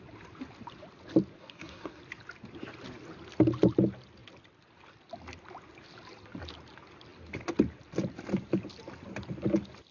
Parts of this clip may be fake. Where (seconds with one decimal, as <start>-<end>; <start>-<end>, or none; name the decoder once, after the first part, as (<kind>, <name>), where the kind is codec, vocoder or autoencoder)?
1.4-2.0 (codec, SNAC)